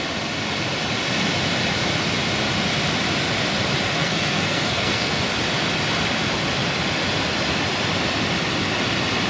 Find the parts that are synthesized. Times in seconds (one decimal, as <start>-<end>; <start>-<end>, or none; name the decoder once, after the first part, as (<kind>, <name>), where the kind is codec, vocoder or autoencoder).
4.0-5.2 (codec, SNAC)